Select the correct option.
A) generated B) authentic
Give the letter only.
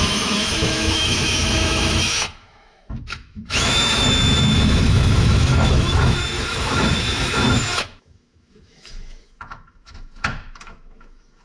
A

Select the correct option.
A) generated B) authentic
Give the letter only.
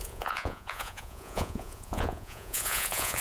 A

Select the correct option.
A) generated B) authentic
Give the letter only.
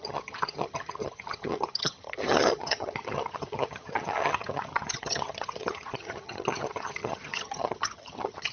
A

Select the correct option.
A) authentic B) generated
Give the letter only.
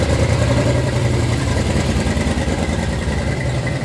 B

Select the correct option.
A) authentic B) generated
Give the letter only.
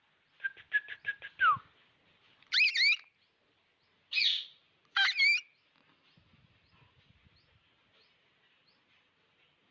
A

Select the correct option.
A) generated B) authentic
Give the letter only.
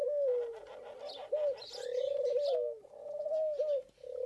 B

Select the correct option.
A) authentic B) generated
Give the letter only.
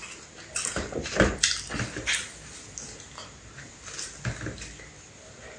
A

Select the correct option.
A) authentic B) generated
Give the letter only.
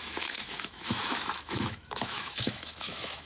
B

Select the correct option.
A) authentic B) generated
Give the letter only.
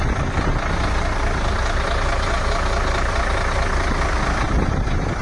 A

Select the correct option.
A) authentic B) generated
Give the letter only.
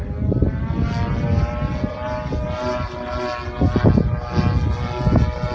A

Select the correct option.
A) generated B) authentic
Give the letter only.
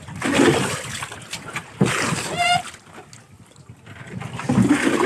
B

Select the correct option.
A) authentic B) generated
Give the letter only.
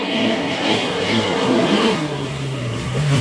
B